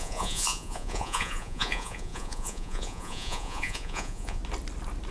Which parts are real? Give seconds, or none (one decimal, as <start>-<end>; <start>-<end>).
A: 4.4-5.1